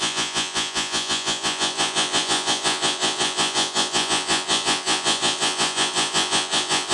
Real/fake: fake